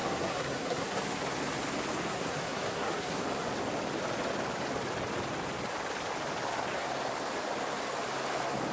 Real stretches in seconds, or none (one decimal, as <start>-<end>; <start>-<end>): 1.0-2.1; 3.2-8.7